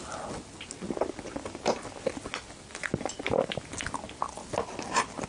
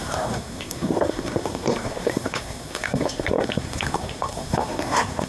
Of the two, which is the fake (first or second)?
second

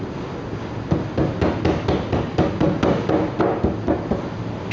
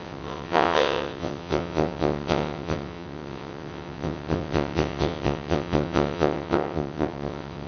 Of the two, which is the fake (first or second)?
second